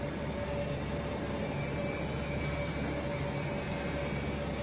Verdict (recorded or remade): recorded